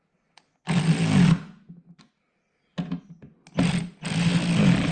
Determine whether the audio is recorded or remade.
recorded